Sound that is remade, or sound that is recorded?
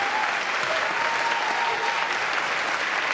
recorded